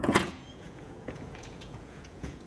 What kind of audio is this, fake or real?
fake